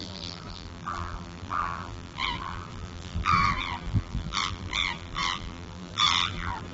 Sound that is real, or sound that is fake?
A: fake